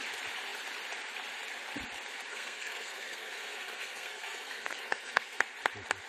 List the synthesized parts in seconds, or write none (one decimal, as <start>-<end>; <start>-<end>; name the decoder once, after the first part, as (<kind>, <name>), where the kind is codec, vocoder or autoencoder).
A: 2.3-5.4 (codec, SNAC)